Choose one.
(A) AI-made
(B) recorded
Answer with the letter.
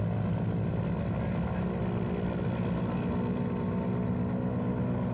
B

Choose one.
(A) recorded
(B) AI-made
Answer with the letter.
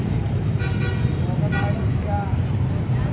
A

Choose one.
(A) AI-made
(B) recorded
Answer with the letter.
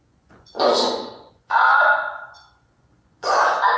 A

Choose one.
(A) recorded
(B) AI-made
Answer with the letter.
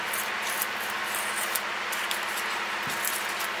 A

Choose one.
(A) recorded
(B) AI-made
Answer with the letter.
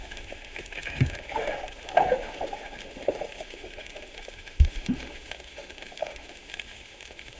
B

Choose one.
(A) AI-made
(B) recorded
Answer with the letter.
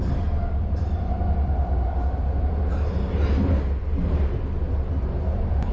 B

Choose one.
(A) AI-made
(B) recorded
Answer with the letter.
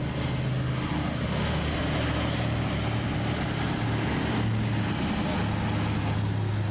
B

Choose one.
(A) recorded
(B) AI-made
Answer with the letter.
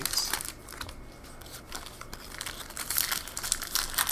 A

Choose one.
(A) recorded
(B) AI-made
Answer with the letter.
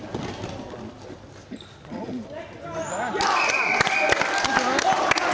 A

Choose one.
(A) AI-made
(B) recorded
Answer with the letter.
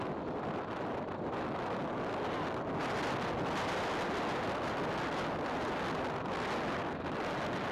B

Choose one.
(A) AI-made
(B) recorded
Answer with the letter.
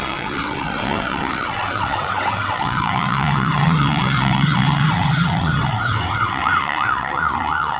A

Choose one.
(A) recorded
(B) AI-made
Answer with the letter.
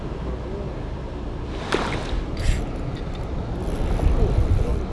A